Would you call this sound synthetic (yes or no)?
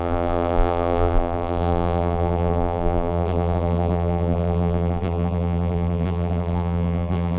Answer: yes